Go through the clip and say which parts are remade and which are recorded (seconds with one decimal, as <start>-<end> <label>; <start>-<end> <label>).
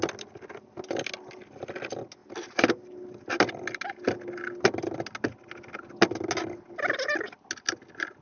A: 0.0-8.2 recorded